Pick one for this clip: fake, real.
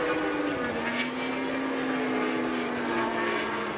real